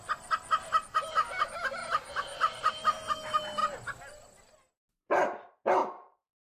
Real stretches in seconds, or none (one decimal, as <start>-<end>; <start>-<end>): 0.0-1.8; 2.7-5.8